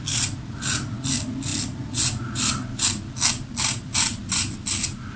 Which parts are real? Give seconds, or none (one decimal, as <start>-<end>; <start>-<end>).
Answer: 0.0-5.2